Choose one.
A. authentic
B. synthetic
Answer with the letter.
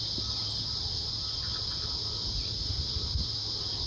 A